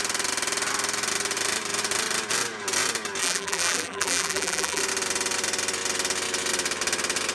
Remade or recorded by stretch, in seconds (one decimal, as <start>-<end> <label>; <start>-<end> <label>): 0.0-3.2 recorded; 3.2-4.8 remade; 4.8-7.3 recorded